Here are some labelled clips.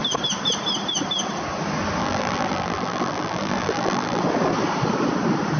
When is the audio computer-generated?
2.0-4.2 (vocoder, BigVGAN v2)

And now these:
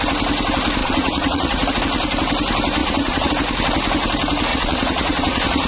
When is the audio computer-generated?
0.8-1.7 (vocoder, Vocos); 2.8-3.3; 4.5-5.7

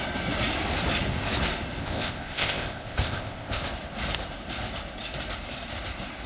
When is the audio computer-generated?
1.8-3.6 (codec, ZipCodec)

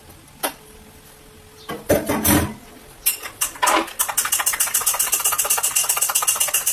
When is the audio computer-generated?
none

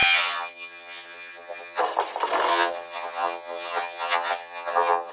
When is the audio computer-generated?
0.0-1.8 (vocoder, HiFi-GAN); 2.5-5.1

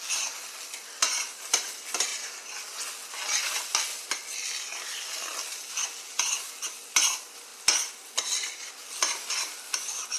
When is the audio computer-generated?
none

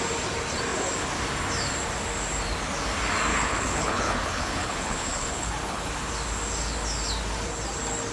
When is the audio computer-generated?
3.3-5.9 (codec, HILCodec)